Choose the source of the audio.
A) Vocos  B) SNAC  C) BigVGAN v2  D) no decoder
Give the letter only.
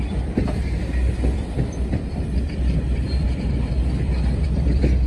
C